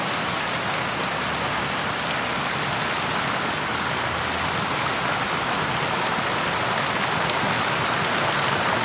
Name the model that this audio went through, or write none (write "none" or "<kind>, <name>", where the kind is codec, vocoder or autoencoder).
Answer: none